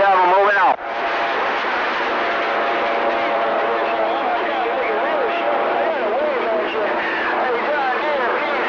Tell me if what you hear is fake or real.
real